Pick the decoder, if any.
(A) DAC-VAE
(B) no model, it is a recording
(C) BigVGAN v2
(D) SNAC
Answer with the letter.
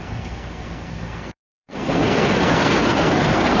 D